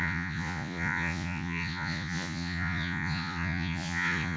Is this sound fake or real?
fake